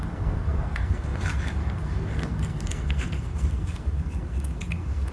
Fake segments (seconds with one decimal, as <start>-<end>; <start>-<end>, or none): 0.0-5.1